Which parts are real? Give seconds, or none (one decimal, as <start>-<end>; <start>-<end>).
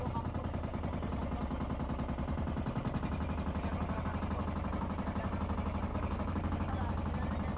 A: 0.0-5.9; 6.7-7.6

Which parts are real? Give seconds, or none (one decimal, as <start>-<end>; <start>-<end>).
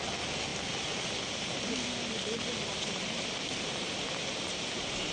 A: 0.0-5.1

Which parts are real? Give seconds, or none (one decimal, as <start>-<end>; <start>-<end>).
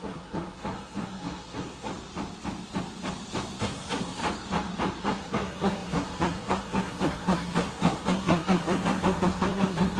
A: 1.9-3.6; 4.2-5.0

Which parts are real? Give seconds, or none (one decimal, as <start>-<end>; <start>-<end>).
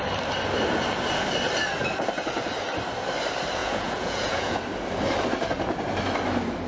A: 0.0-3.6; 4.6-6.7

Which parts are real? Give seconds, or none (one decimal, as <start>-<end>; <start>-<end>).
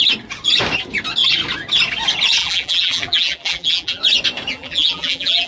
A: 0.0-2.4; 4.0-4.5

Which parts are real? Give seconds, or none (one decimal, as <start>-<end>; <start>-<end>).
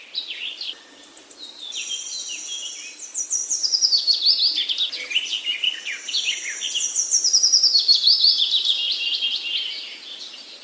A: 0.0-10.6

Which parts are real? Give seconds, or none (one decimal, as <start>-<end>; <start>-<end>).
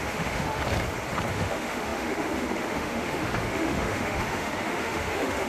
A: 0.6-1.3